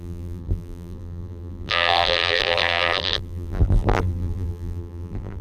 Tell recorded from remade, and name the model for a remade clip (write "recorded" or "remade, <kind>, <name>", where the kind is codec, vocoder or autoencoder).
remade, vocoder, BigVGAN v2